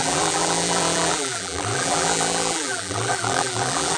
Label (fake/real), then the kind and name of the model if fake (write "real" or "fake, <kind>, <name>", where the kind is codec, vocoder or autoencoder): fake, vocoder, BigVGAN v2